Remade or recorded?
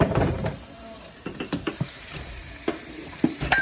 remade